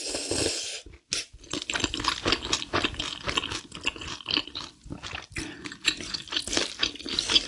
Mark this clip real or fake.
real